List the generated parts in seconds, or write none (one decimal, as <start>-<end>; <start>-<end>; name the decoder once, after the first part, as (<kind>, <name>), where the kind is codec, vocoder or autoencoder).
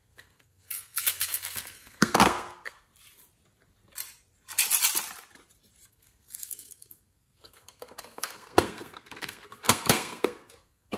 0.0-2.9 (codec, SNAC); 5.9-11.0